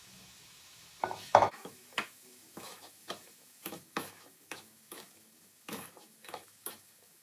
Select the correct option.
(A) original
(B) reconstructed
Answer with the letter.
B